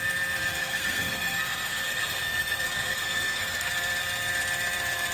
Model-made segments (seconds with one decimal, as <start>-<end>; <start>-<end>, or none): 0.6-3.7